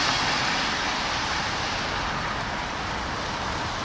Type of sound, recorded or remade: recorded